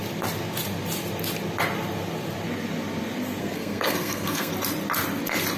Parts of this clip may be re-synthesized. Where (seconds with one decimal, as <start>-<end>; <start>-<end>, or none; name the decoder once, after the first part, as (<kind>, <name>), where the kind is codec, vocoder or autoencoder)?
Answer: 3.4-4.5 (codec, SNAC)

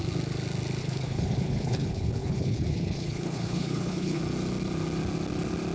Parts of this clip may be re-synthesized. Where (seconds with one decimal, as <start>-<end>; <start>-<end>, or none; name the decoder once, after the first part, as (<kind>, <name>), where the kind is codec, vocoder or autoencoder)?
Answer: 0.8-4.2 (codec, HILCodec)

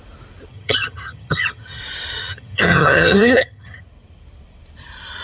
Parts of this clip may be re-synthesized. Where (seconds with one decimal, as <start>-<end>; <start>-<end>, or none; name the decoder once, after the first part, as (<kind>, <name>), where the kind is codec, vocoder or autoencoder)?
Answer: 0.5-1.8 (vocoder, HiFi-GAN); 2.2-3.8

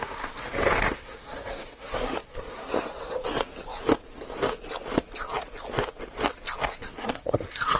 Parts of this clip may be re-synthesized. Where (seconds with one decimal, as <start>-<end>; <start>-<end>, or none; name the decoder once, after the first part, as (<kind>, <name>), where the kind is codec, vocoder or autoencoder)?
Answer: 0.0-0.4 (codec, SNAC); 0.9-2.7; 6.8-7.8

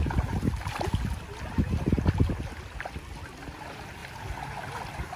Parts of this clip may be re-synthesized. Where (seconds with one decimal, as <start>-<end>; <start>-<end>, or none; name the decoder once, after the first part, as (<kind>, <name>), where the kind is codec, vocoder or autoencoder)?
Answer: none

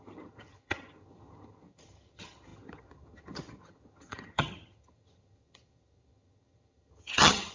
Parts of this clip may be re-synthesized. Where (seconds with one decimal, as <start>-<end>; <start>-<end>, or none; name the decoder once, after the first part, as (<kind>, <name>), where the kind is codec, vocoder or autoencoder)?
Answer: 0.0-7.5 (vocoder, HiFi-GAN)

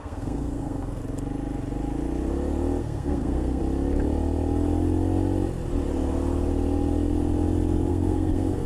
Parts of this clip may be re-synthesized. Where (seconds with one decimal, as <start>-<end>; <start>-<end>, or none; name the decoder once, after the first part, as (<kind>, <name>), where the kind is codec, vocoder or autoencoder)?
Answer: 0.0-1.0 (codec, SNAC); 2.8-3.6; 7.9-8.7